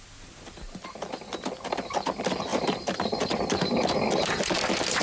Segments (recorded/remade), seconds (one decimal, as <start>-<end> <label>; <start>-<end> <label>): 0.0-2.5 recorded; 2.5-4.4 remade; 4.4-5.0 recorded